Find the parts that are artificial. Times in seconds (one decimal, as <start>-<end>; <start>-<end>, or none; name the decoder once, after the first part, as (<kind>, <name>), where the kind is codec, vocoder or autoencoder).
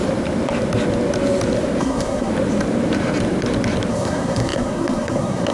1.8-2.3 (codec, SNAC); 3.9-5.5